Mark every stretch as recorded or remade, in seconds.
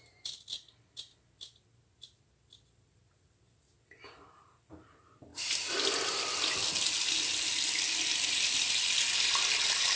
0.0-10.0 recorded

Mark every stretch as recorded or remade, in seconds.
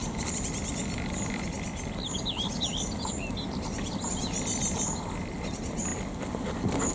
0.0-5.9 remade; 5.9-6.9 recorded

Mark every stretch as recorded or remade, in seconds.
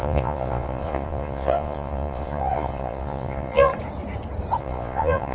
0.0-3.7 remade; 3.7-4.6 recorded; 4.6-5.3 remade